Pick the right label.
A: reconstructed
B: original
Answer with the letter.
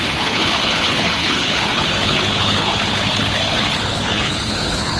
A